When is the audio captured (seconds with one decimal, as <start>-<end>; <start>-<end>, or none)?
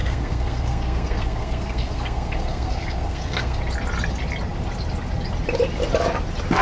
3.6-6.6